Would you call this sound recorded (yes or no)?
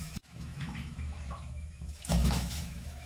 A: no